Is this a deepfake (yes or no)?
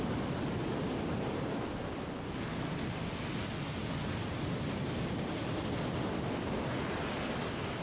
no